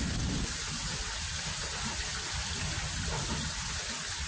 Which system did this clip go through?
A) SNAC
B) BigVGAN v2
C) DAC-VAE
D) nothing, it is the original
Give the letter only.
D